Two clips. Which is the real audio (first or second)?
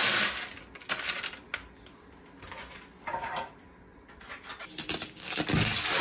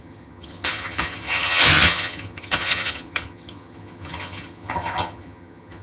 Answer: first